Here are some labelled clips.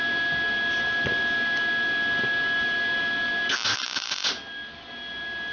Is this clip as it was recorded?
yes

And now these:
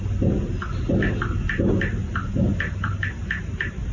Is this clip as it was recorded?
yes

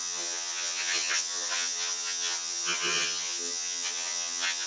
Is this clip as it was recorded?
no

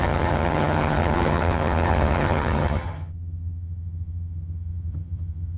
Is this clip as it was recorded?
no